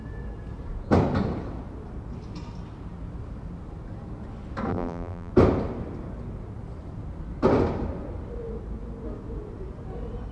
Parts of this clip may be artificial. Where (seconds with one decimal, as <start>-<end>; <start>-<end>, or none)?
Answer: 4.7-5.3

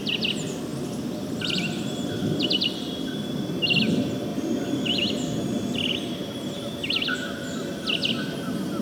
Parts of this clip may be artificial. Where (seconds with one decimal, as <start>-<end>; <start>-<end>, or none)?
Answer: 0.7-3.1; 4.3-8.8

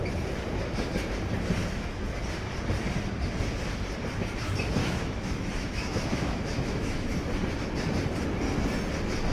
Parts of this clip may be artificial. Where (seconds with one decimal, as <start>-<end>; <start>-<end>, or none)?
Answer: 1.6-2.2; 4.8-7.3

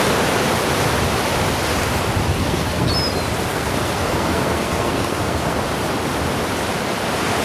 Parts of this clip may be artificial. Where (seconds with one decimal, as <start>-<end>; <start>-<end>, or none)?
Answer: 2.3-2.9; 3.5-5.6

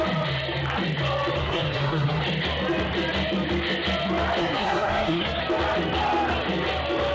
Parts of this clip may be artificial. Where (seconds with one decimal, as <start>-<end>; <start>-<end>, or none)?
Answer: 1.4-2.2; 4.4-5.4

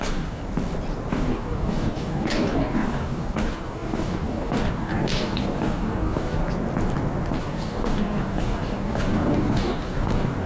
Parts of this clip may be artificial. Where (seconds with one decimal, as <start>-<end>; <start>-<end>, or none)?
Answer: 0.0-0.4; 1.1-6.4; 7.4-10.5

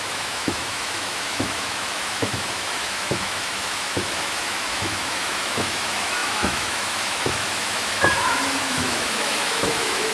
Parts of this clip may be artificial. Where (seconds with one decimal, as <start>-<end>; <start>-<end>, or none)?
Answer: 0.0-10.1

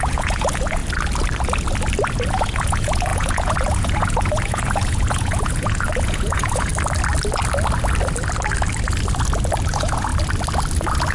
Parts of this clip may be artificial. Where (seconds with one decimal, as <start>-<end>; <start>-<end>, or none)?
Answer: 0.0-0.8; 2.3-6.7; 9.7-10.1